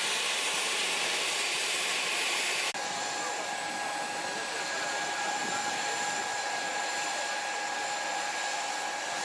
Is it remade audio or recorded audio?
recorded